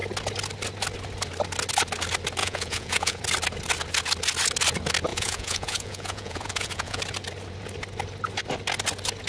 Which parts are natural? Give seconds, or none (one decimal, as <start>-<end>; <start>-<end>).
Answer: 0.0-2.4; 3.2-5.1; 7.0-9.3